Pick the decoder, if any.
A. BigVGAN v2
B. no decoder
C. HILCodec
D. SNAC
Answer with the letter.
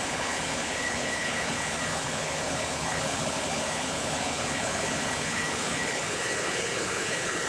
C